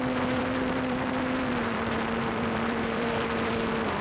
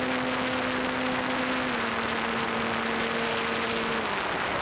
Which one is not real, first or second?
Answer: first